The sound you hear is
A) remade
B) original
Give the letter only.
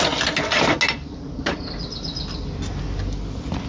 B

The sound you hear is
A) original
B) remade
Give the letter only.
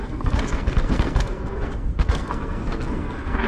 B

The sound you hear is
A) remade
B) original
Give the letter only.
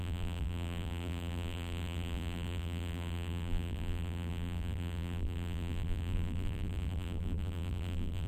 A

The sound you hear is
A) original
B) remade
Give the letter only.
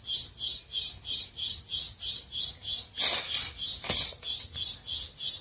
A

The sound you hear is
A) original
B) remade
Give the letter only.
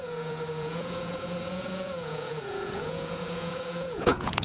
B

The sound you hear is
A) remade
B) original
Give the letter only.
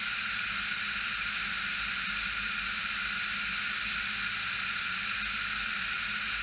B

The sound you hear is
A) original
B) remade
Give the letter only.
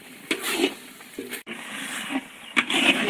B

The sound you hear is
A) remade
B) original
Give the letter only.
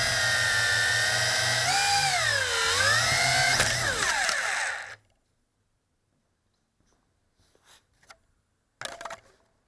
B